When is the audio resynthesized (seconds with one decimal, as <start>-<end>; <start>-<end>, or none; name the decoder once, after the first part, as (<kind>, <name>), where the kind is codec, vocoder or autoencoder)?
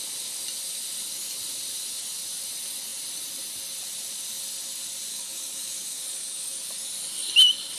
5.1-6.6 (codec, DAC)